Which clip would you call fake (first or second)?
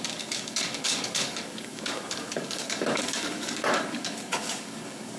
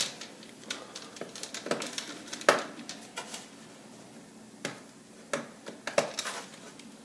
first